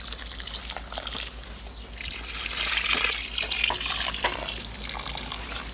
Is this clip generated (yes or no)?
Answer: no